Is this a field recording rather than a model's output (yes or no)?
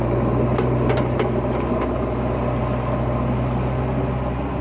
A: yes